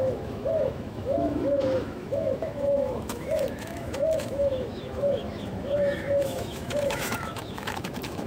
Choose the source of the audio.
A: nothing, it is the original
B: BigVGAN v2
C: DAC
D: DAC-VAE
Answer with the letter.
D